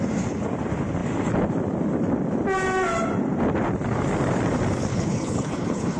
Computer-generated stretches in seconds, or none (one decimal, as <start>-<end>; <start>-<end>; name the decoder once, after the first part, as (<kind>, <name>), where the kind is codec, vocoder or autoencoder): 4.9-6.0 (codec, HILCodec)